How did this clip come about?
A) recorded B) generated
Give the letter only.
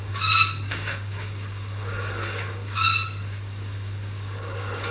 B